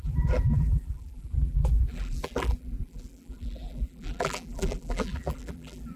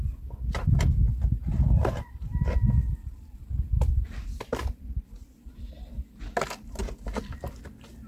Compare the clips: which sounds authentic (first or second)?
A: second